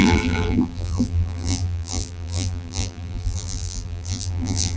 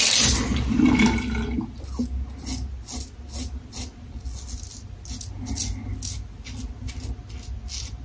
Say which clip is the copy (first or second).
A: first